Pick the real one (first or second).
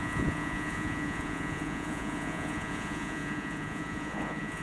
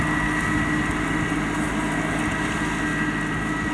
second